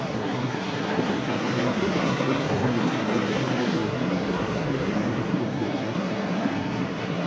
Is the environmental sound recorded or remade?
remade